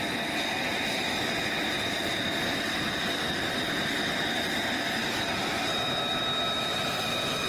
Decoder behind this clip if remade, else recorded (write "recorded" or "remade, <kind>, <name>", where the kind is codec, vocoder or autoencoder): recorded